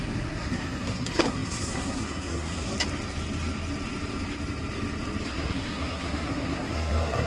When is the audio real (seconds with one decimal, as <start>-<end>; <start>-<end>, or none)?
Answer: 2.7-5.3